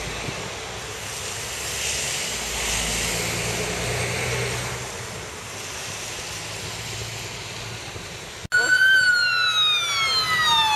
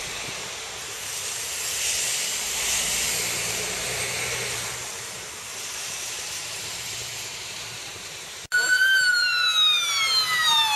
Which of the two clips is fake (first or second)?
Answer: second